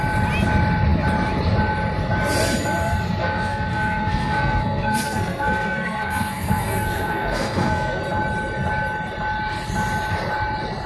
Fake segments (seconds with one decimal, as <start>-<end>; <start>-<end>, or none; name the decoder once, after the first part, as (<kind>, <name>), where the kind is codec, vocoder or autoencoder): 3.2-8.0 (codec, SNAC)